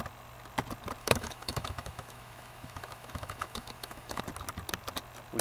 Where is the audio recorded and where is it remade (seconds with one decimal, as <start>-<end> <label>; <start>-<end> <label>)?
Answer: 0.0-1.0 recorded; 1.0-4.2 remade; 4.2-5.4 recorded